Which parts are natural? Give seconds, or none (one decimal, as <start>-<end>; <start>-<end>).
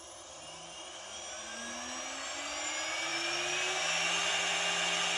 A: 0.0-5.2